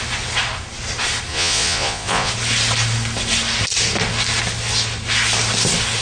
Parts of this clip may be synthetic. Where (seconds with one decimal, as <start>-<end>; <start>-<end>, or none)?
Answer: 1.3-2.3